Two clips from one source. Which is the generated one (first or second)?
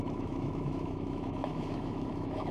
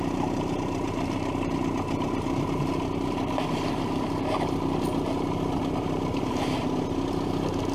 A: first